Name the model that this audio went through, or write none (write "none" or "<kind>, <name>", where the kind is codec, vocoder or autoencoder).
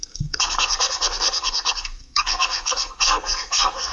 codec, SNAC